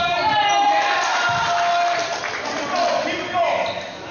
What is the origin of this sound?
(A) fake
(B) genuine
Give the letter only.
B